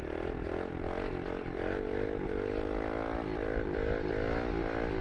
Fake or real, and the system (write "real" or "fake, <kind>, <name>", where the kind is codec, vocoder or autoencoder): real